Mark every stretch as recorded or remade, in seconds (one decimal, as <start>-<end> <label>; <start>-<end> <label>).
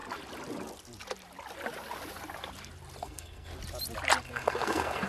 0.0-3.0 recorded; 3.0-3.5 remade; 3.5-4.2 recorded; 4.2-5.1 remade